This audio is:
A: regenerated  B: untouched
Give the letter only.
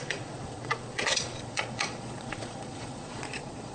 A